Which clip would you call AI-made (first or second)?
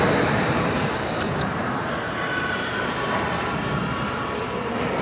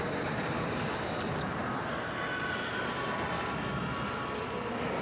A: first